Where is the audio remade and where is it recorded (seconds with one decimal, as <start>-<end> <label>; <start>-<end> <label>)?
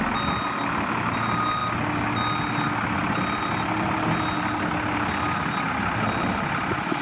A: 0.0-7.0 recorded